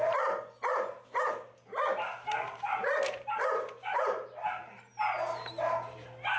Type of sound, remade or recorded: recorded